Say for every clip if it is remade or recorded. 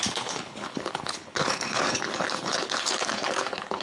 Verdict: remade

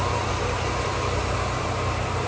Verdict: remade